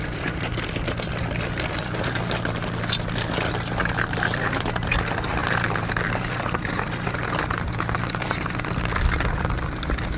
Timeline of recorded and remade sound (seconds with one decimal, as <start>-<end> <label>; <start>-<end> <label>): 0.0-10.2 recorded